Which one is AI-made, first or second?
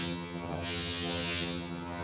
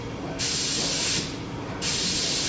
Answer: first